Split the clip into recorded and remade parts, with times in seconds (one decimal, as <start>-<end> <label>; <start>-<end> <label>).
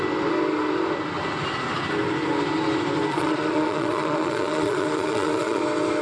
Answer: 0.0-3.1 recorded; 3.1-5.6 remade; 5.6-6.0 recorded